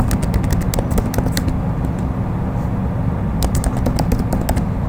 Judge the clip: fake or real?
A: real